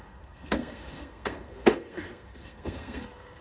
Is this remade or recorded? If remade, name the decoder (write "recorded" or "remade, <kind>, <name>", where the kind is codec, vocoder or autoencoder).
remade, codec, SNAC